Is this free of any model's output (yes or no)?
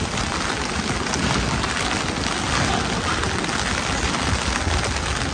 yes